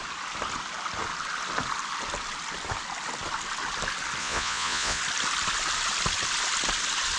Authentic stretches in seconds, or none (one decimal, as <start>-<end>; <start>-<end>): 0.0-4.2; 5.0-7.2